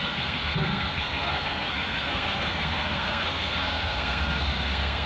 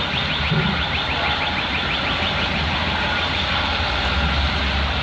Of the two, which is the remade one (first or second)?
first